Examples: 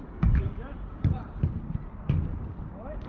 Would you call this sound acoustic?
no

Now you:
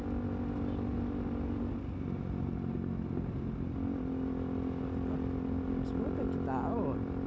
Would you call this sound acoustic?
yes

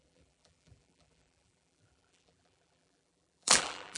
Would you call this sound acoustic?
no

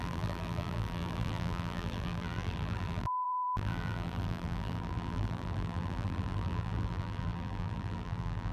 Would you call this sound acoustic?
no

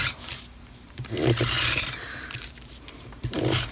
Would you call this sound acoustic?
no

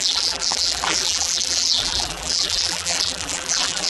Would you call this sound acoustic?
no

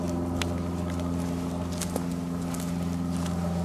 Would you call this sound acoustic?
yes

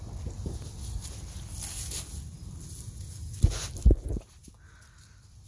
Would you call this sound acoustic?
yes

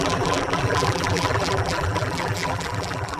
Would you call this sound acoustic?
no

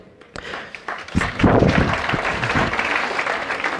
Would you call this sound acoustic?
no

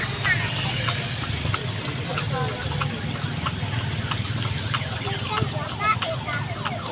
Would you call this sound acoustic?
yes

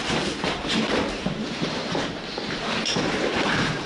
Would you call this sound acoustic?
no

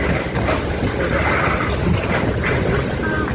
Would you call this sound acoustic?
yes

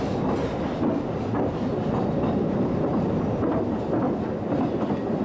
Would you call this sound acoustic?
yes